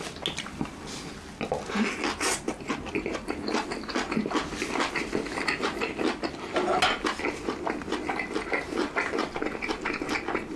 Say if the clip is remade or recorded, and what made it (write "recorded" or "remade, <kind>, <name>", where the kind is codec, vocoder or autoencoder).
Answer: recorded